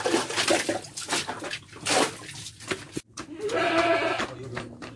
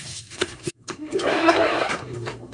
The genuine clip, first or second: first